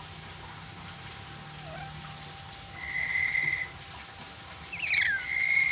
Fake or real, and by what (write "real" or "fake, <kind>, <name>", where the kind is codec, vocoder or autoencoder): real